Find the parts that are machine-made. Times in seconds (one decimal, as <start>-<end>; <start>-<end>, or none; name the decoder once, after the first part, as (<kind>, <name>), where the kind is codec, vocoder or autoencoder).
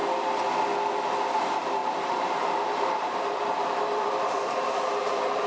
0.9-5.5 (vocoder, BigVGAN v2)